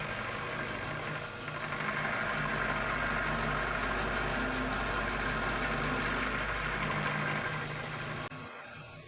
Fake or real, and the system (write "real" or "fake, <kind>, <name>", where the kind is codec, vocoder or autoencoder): real